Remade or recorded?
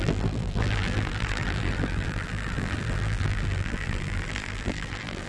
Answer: remade